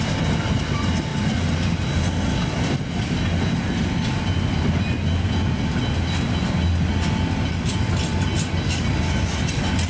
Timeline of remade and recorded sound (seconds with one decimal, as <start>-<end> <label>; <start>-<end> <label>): 0.0-9.9 recorded